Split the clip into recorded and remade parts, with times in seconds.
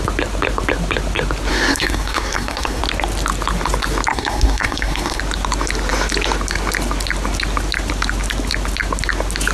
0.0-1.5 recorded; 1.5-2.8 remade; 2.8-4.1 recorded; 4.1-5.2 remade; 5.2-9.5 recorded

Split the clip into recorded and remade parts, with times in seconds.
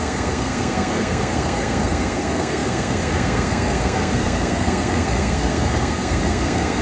0.0-6.8 remade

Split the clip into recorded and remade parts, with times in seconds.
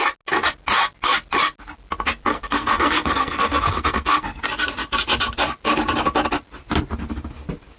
0.0-2.3 recorded; 2.3-4.4 remade; 4.4-7.8 recorded